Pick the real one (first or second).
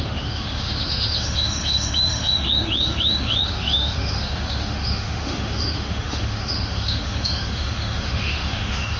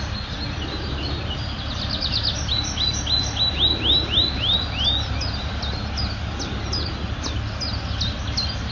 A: second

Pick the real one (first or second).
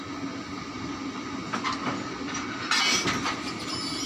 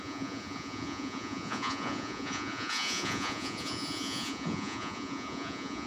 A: first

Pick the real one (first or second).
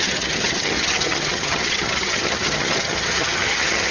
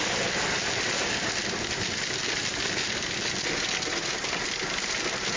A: second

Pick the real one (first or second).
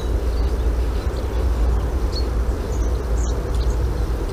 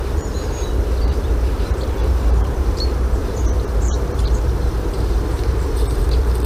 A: first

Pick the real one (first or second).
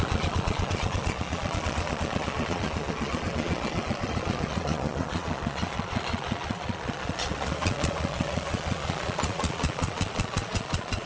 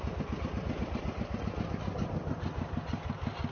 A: second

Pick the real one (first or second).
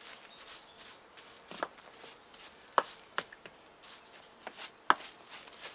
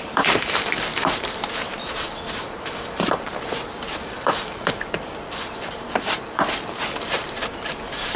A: first